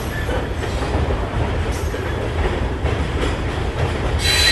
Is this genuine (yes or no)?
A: no